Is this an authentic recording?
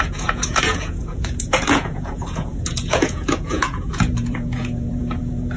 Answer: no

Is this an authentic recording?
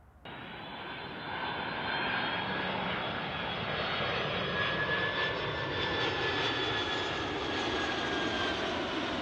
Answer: yes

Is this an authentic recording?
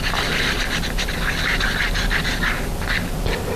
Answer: yes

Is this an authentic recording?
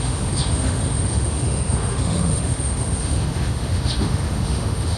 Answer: no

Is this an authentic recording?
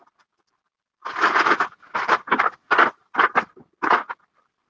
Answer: yes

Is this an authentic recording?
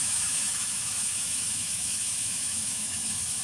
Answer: no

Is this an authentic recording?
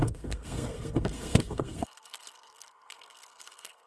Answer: no